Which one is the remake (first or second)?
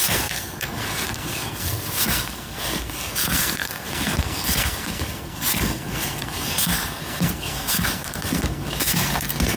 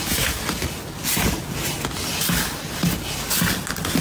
first